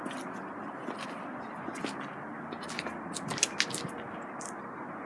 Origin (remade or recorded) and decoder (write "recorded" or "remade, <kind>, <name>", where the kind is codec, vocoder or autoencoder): recorded